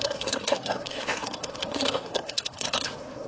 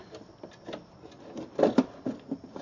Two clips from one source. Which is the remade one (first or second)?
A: first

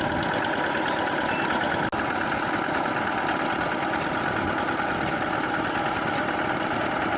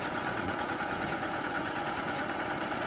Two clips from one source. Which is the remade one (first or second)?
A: second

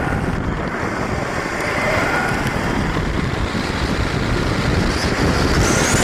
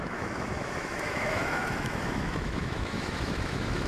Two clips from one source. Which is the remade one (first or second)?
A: second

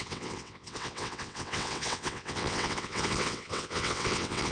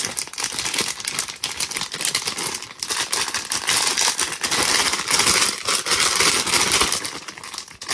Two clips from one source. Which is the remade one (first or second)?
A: first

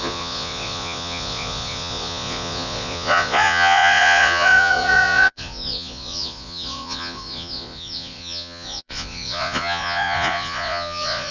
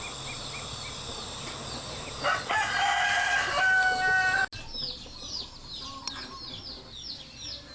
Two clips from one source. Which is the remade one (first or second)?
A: first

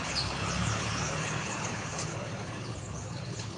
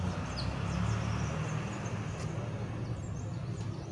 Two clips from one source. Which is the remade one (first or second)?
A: first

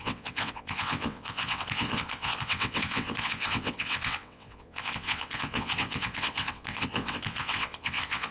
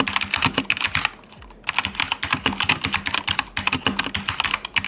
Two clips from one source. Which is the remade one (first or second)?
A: first